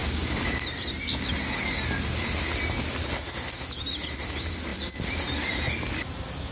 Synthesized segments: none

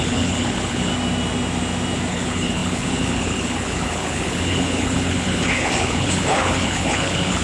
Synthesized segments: 0.0-0.9; 2.1-7.4

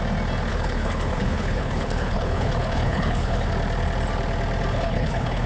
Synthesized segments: 0.5-3.5; 4.7-5.5

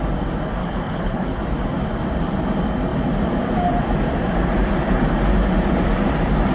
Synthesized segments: 0.6-1.4

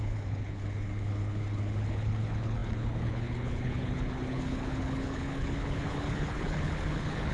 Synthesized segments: 0.0-7.3

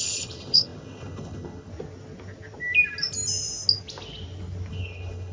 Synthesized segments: 0.0-1.7; 4.7-5.3